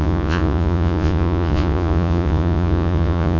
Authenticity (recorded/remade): remade